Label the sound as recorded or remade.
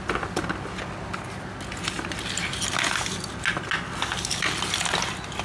recorded